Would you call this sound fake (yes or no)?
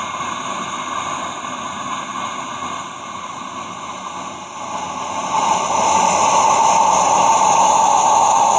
no